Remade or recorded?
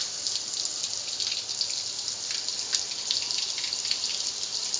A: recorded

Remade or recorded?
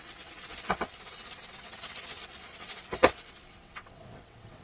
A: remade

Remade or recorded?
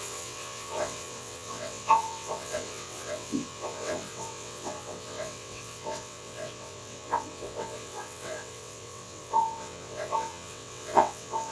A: remade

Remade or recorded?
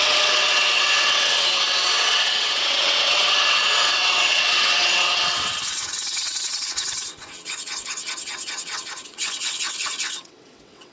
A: remade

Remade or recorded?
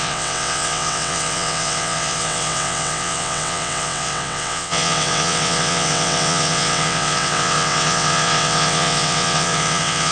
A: remade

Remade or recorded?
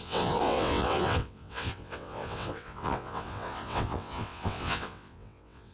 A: remade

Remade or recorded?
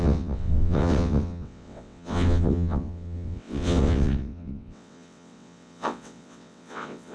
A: remade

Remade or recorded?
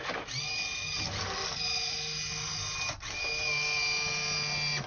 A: recorded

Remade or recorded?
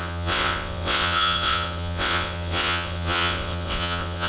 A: remade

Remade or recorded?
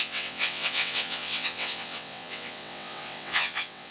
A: remade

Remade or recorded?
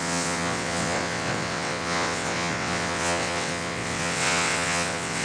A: remade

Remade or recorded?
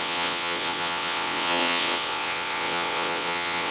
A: remade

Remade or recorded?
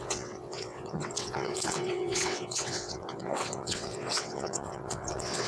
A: remade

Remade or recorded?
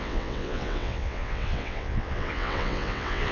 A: remade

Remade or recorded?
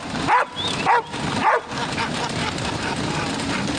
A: recorded